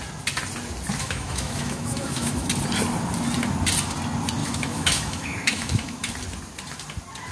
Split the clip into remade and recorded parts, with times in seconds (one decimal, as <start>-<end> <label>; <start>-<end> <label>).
0.0-1.0 recorded; 1.0-2.5 remade; 2.5-4.4 recorded; 4.4-6.1 remade; 6.1-7.3 recorded